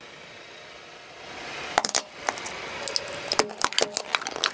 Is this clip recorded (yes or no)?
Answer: yes